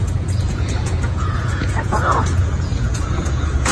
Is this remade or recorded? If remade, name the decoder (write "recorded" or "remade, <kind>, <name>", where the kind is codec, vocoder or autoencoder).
remade, vocoder, Vocos